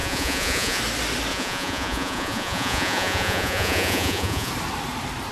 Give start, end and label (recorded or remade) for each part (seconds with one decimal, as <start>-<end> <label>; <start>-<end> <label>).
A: 0.0-0.8 remade; 0.8-1.3 recorded; 1.3-4.5 remade; 4.5-5.3 recorded

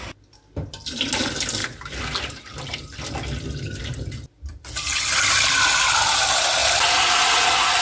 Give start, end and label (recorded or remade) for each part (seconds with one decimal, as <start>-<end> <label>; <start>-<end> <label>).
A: 0.0-7.8 recorded

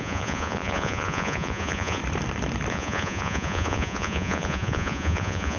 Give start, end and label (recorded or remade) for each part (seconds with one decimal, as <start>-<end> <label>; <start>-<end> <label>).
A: 0.0-2.0 remade; 2.0-2.7 recorded; 2.7-5.6 remade

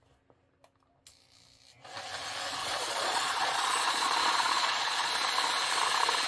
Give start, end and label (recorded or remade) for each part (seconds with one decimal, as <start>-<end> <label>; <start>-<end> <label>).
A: 0.0-2.6 recorded; 2.6-5.1 remade; 5.1-6.3 recorded

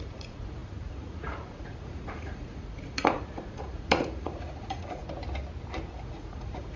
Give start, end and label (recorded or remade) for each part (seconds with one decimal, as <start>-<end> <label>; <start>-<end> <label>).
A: 0.0-5.0 remade; 5.0-5.9 recorded; 5.9-6.8 remade

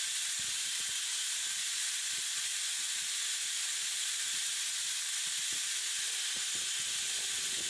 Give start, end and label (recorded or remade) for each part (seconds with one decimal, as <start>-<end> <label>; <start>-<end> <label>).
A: 0.0-7.7 recorded

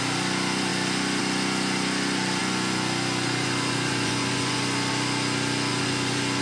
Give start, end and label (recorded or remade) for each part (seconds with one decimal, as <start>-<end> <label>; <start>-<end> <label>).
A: 0.0-2.4 recorded; 2.4-4.9 remade; 4.9-5.7 recorded; 5.7-6.4 remade

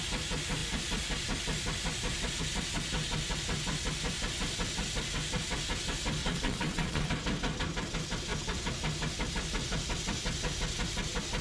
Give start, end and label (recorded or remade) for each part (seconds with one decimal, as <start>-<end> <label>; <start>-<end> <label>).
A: 0.0-6.2 recorded; 6.2-7.1 remade; 7.1-11.4 recorded